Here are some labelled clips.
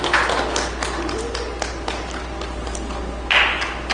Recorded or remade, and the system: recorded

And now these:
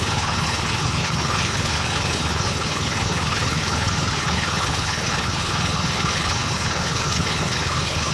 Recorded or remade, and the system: remade, codec, HILCodec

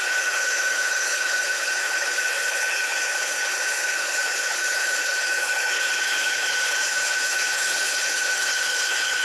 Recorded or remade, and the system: remade, codec, HILCodec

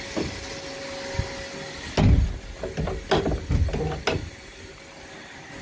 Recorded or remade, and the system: recorded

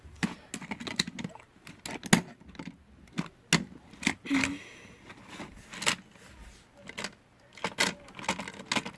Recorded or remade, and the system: recorded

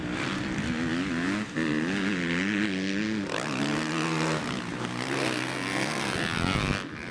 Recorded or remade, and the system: recorded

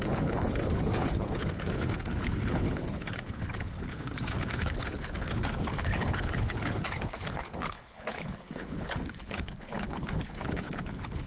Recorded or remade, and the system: remade, codec, HILCodec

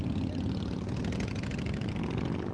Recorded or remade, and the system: recorded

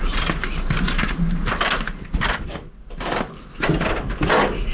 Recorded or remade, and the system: recorded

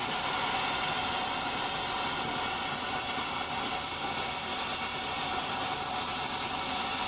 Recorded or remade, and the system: recorded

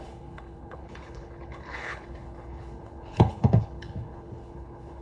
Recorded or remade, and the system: remade, codec, HILCodec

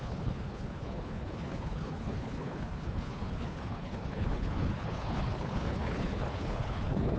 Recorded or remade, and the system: remade, codec, HILCodec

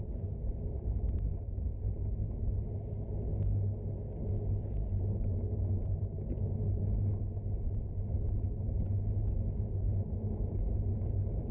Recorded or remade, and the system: recorded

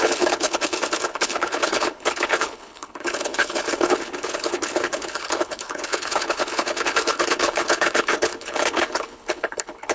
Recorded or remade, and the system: remade, codec, HILCodec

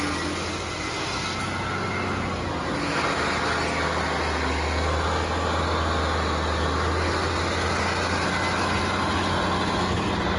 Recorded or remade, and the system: recorded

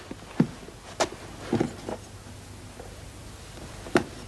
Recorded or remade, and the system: recorded